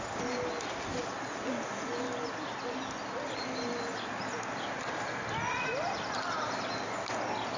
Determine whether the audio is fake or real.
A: real